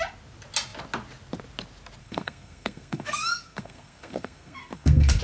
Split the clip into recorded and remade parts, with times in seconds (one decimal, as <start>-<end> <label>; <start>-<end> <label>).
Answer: 0.0-2.0 recorded; 2.0-5.2 remade